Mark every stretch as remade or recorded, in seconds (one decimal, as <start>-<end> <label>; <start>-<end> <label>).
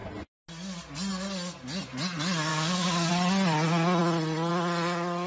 0.0-2.5 recorded; 2.5-3.1 remade; 3.1-5.3 recorded